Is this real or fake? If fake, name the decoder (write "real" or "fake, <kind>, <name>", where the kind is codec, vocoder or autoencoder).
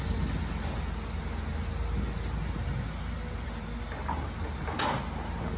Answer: real